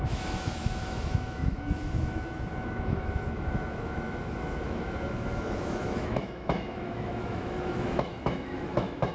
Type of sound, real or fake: fake